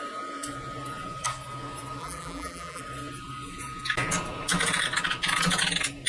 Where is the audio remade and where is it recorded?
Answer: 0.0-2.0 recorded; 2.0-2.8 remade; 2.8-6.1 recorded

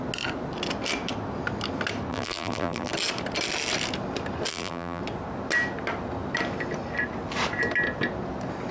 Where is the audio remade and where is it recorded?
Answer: 0.0-2.1 recorded; 2.1-2.9 remade; 2.9-4.5 recorded; 4.5-5.0 remade; 5.0-8.7 recorded

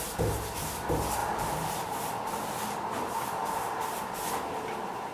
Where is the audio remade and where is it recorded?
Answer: 0.0-1.2 recorded; 1.2-4.3 remade; 4.3-5.1 recorded

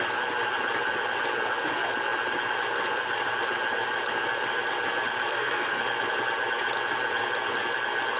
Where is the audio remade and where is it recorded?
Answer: 0.0-5.3 recorded; 5.3-5.8 remade; 5.8-8.2 recorded